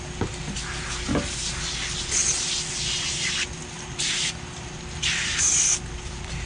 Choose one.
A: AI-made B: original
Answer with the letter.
B